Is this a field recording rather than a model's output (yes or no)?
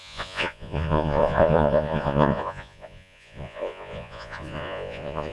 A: no